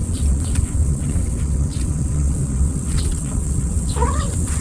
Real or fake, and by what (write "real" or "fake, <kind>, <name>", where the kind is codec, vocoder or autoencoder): fake, vocoder, WaveNeXt